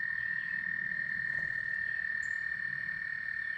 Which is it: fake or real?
fake